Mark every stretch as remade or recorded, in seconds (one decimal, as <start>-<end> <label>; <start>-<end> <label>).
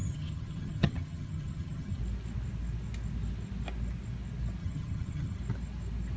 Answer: 0.0-2.0 remade; 2.0-4.6 recorded; 4.6-5.4 remade; 5.4-6.2 recorded